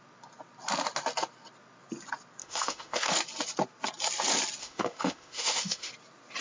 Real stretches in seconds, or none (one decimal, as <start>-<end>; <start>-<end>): 0.0-2.4; 3.1-4.6; 5.9-6.4

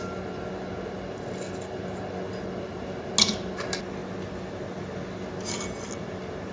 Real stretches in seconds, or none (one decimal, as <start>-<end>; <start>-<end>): 0.0-6.5

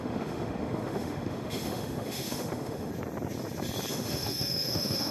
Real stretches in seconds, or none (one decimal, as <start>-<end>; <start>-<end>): 2.9-3.9

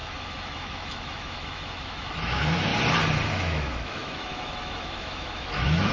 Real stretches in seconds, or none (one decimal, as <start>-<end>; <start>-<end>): 2.7-3.3

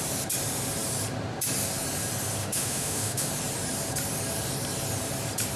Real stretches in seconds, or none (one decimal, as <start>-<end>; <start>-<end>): 0.0-2.4; 3.3-5.6

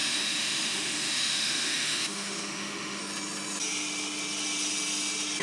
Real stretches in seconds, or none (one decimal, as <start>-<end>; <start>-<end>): 3.0-5.4